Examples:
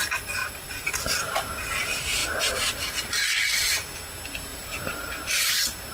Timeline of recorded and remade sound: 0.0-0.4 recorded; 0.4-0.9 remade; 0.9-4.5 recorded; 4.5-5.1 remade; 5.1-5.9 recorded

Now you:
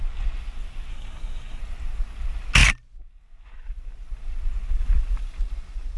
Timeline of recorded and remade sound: 0.0-0.9 recorded; 0.9-1.6 remade; 1.6-6.0 recorded

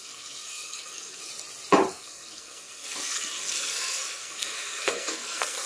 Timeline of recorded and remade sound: 0.0-1.3 remade; 1.3-1.9 recorded; 1.9-5.7 remade